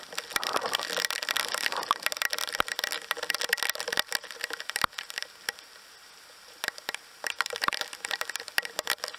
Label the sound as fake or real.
real